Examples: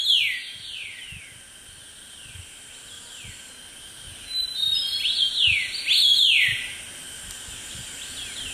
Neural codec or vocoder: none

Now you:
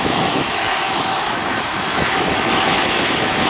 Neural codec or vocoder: autoencoder, DAC-VAE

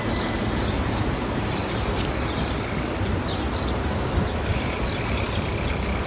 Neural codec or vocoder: none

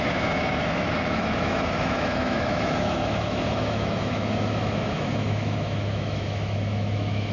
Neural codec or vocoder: autoencoder, DAC-VAE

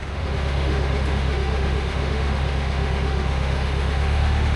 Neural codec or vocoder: autoencoder, DAC-VAE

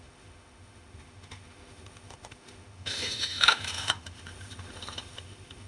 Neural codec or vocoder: autoencoder, DAC-VAE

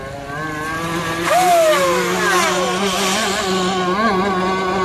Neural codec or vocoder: none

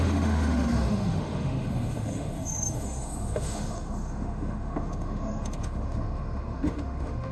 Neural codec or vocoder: autoencoder, DAC-VAE